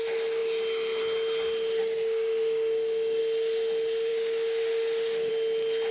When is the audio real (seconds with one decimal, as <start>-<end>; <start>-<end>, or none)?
0.0-1.8; 3.2-4.1; 5.3-5.9

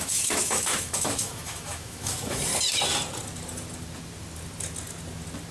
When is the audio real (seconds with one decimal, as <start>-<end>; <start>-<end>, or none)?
2.5-5.5

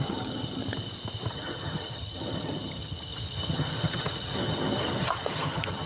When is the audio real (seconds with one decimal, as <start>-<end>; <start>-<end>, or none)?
0.6-1.3

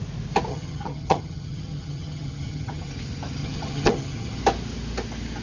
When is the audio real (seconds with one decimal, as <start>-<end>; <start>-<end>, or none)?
0.0-0.5; 2.9-3.4; 4.4-5.4

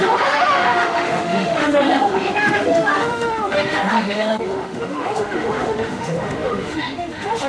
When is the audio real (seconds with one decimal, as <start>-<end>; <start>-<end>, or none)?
none

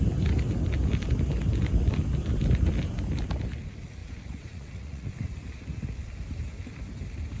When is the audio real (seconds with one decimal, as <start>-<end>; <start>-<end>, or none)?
0.0-4.0; 5.1-7.4

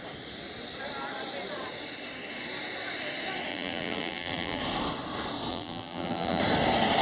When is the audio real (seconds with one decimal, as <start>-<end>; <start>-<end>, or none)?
0.0-3.5; 4.6-5.5; 6.4-7.0

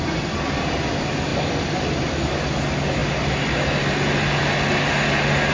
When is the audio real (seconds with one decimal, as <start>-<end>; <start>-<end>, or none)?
0.0-1.3; 2.3-5.5